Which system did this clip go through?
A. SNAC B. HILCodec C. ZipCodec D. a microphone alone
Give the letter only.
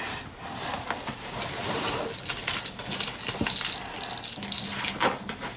D